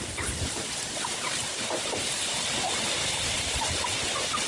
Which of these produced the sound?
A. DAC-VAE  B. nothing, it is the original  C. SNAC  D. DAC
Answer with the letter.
B